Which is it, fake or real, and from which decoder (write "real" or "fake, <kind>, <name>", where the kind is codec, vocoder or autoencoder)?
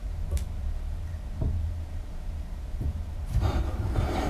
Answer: fake, vocoder, BigVGAN v2